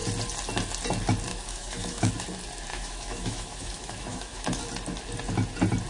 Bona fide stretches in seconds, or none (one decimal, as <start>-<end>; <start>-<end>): 0.0-1.3; 2.1-2.7; 4.6-5.9